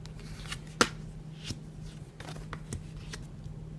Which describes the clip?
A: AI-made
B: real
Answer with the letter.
B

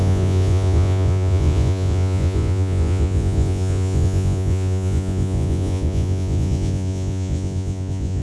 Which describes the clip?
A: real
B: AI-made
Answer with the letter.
B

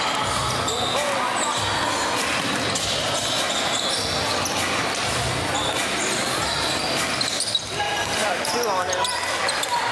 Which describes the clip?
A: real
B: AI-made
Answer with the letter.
A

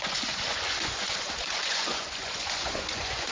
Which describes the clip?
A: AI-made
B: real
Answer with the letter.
A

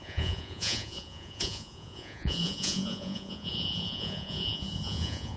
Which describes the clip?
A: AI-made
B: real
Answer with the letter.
A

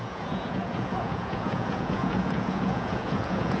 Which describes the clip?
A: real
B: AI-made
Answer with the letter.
B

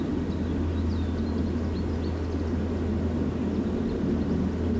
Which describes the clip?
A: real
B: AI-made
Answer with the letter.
A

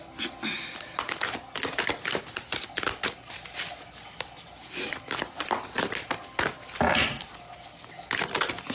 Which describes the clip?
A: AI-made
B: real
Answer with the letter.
B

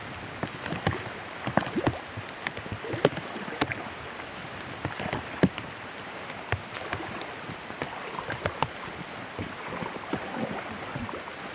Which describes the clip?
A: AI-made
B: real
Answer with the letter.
B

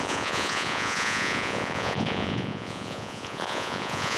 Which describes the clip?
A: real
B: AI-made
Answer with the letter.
B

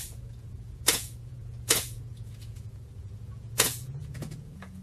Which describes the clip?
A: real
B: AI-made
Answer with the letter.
B